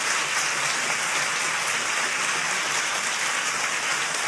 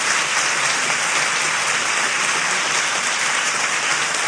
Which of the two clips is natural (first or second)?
first